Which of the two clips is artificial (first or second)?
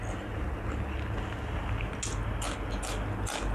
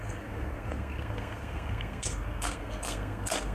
second